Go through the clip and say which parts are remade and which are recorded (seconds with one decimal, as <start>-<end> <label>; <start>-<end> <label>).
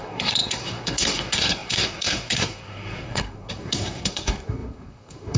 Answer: 0.0-5.4 remade